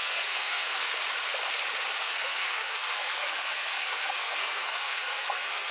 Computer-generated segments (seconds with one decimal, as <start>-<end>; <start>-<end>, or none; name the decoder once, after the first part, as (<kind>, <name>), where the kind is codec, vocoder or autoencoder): 0.0-0.9 (codec, SNAC); 2.0-5.7